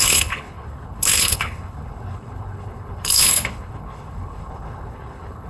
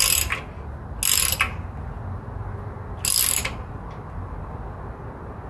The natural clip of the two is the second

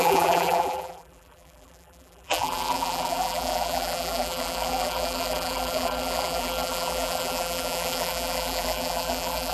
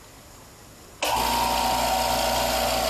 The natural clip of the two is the second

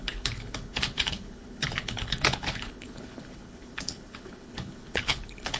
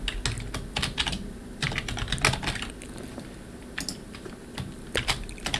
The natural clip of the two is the second